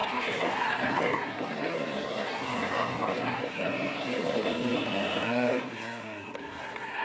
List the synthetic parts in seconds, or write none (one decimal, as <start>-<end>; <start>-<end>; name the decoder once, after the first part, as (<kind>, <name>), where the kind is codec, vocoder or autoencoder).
0.0-7.0 (codec, SNAC)